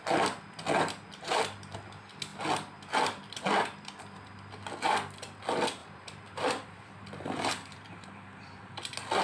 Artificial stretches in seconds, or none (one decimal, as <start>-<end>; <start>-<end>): 5.8-8.7